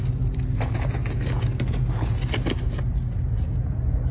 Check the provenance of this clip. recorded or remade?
recorded